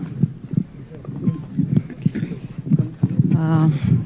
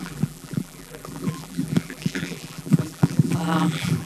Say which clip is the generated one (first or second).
second